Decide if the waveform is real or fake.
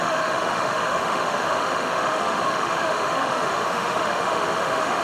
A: fake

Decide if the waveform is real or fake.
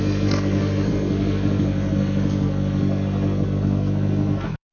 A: fake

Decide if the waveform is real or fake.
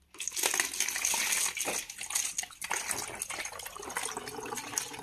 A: real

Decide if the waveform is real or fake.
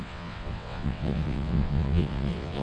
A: fake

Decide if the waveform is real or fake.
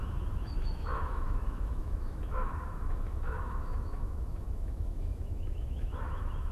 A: fake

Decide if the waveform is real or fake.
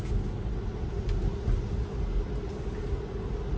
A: real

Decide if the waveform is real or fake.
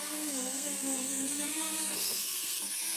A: fake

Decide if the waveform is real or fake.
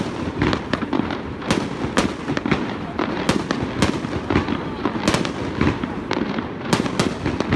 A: real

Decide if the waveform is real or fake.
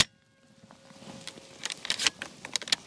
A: real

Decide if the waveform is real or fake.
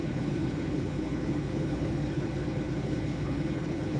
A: fake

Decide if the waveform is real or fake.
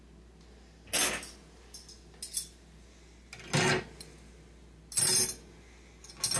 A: real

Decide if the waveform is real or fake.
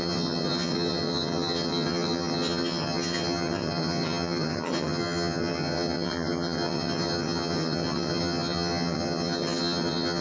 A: fake